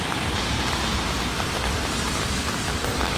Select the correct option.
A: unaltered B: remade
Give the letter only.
A